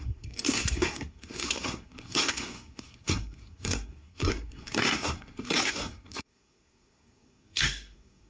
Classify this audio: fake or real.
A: fake